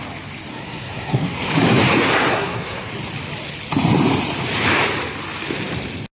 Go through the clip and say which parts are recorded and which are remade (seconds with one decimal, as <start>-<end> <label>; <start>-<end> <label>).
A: 0.0-0.5 recorded; 0.5-1.5 remade; 1.5-2.2 recorded; 2.2-2.9 remade; 2.9-6.2 recorded